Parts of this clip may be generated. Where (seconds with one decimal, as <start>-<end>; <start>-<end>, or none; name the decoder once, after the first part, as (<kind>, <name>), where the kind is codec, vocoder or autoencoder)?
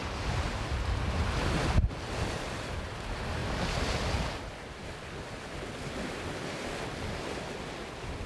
none